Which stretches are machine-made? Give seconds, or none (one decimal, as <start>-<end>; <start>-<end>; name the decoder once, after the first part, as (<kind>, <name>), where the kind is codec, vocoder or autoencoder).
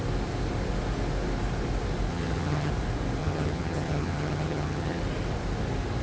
2.1-2.7 (vocoder, HiFi-GAN); 3.2-5.0